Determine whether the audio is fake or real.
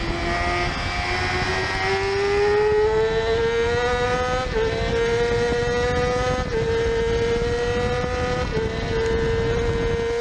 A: real